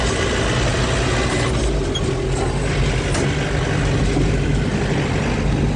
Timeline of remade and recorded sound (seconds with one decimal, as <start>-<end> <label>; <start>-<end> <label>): 0.0-5.8 recorded